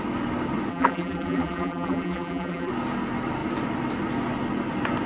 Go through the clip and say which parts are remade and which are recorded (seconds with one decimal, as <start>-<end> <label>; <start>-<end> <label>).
0.0-0.7 recorded; 0.7-2.7 remade; 2.7-5.1 recorded